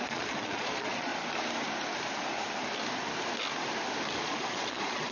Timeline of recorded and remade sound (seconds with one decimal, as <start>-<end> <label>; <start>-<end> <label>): 0.0-1.1 remade; 1.1-4.2 recorded; 4.2-5.1 remade